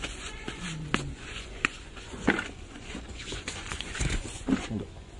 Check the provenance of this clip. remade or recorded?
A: remade